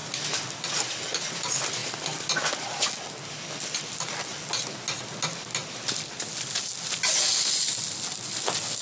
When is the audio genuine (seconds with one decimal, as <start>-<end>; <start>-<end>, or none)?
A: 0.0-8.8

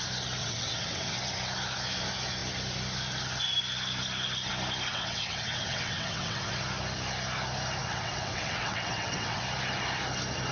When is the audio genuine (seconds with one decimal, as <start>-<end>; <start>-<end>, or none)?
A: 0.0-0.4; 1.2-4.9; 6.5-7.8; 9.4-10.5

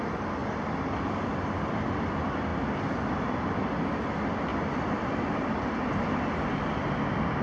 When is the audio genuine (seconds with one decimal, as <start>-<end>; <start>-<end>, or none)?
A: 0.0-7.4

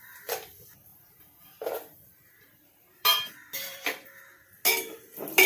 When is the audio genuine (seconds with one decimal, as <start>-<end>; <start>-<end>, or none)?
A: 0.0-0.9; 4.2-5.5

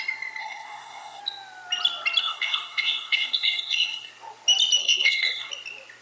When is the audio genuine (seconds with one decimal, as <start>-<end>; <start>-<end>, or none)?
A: 0.0-0.4; 1.2-2.2; 4.1-4.8; 5.5-6.0

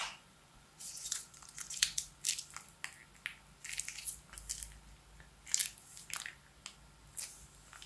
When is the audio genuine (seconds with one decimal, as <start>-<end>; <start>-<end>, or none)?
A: 2.1-7.9